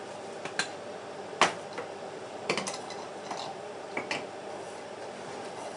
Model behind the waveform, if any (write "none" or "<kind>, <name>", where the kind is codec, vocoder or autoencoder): none